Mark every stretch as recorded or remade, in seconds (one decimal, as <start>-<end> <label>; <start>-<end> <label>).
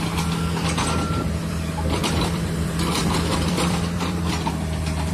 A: 0.0-1.4 recorded; 1.4-4.5 remade; 4.5-5.1 recorded